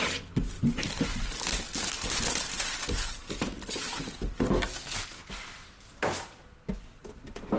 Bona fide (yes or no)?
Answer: yes